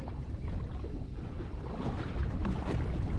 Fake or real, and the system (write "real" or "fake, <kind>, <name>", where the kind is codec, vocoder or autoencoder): real